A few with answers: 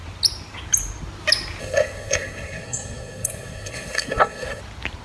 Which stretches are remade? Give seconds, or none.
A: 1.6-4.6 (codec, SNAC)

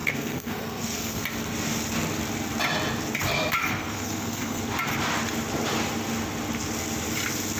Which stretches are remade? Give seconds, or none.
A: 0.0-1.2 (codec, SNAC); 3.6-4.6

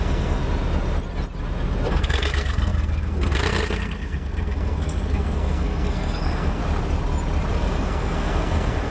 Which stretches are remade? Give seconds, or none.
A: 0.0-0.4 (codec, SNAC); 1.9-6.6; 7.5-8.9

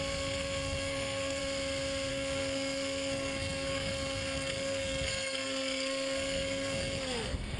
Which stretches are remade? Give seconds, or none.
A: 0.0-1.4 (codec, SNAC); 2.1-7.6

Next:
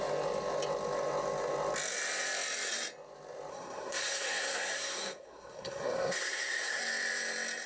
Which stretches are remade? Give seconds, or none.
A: 3.5-6.8 (codec, SNAC)

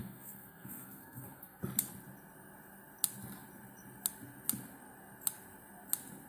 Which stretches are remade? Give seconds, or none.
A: 0.0-1.6 (codec, SNAC)

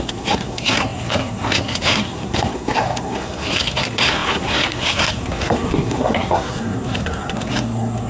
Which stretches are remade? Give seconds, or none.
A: 0.0-8.1 (codec, SNAC)

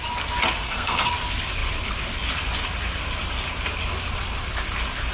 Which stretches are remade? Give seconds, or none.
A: 0.6-1.1 (codec, SNAC)